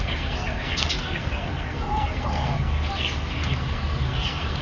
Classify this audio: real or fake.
fake